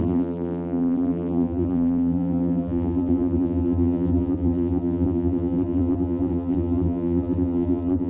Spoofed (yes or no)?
yes